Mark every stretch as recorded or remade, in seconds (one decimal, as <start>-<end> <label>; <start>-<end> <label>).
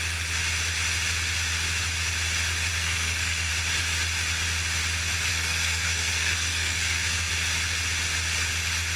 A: 0.0-2.7 recorded; 2.7-3.5 remade; 3.5-5.3 recorded; 5.3-7.3 remade; 7.3-9.0 recorded